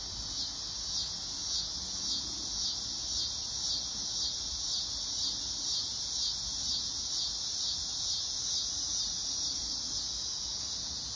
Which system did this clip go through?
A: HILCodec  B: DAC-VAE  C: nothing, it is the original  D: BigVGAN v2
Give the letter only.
C